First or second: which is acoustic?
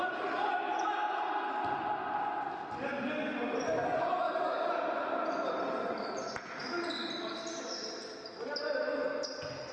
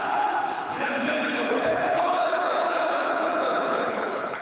first